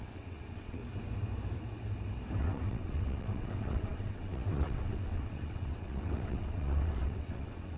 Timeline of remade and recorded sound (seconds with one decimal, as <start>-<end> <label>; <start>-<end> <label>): 0.0-0.8 remade; 0.8-2.4 recorded; 2.4-7.8 remade